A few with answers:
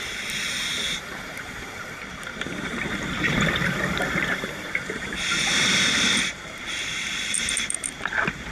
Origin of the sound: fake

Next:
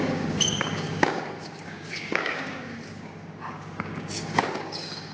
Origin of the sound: fake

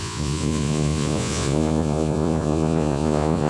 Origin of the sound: fake